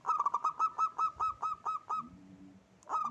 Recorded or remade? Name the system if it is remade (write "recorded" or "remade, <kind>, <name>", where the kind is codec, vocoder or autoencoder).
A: recorded